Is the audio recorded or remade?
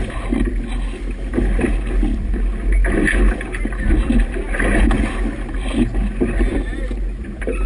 recorded